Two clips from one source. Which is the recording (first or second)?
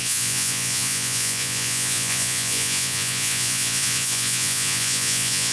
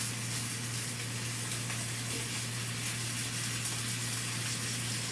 second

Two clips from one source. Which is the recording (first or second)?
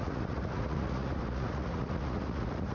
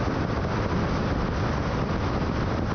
second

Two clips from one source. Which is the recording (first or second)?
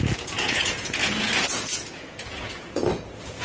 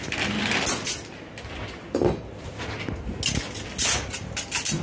second